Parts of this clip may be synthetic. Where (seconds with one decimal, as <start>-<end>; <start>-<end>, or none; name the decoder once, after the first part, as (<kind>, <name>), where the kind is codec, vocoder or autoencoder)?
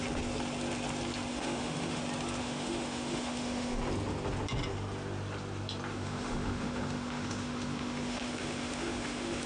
1.3-2.0 (autoencoder, DAC-VAE); 2.4-3.8; 5.9-9.5